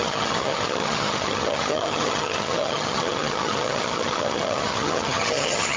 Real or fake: fake